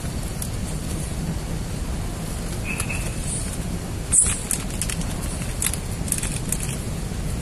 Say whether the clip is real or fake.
real